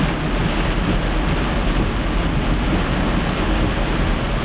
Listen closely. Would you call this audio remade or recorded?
recorded